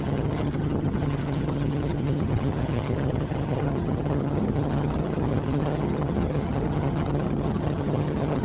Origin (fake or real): fake